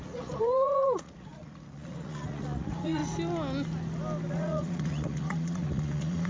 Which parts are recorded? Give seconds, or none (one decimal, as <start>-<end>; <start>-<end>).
3.0-4.3